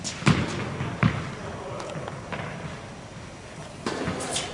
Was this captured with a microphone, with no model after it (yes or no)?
yes